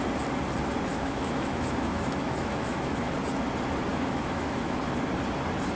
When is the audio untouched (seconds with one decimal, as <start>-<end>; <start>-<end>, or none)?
0.0-0.9; 3.1-3.9; 4.8-5.8